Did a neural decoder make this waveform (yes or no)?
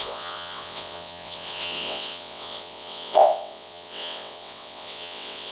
yes